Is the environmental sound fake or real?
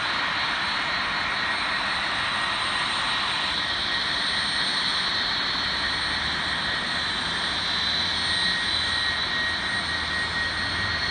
real